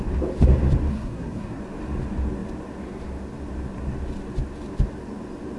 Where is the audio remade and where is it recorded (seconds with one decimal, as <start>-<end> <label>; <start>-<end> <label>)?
0.0-0.9 recorded; 0.9-1.6 remade; 1.6-5.6 recorded